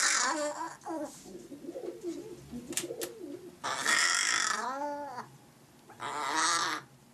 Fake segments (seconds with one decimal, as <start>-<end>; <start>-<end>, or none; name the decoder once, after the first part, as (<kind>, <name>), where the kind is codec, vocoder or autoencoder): none